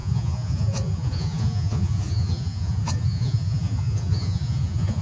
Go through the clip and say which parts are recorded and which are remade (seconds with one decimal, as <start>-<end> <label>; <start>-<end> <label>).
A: 0.0-5.0 remade